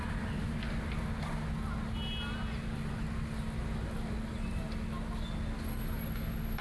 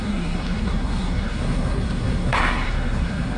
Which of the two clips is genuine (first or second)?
first